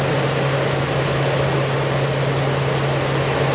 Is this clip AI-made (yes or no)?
no